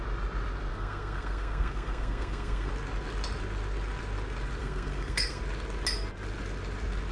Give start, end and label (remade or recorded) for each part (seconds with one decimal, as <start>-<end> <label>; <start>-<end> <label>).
0.0-0.7 recorded; 0.7-2.7 remade; 2.7-4.6 recorded; 4.6-5.4 remade; 5.4-7.1 recorded

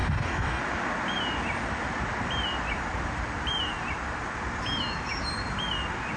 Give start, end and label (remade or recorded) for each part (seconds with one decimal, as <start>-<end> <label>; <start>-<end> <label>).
0.0-0.6 remade; 0.6-6.2 recorded

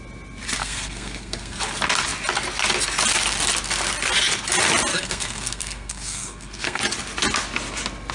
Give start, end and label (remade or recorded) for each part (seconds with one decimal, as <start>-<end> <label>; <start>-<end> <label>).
0.0-0.6 recorded; 0.6-1.6 remade; 1.6-4.9 recorded; 4.9-6.8 remade; 6.8-8.1 recorded

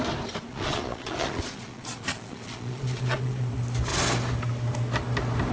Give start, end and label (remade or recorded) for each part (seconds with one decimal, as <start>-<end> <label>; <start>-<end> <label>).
0.0-0.5 recorded; 0.5-3.5 remade; 3.5-5.5 recorded

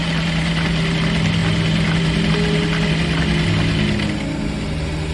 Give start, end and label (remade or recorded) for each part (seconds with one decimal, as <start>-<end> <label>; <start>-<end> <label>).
0.0-5.1 recorded